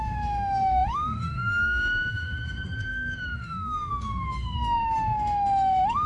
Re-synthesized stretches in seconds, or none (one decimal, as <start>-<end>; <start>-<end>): 0.0-6.1